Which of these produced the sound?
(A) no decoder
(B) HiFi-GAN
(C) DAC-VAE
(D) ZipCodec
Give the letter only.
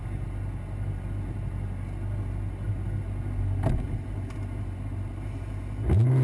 A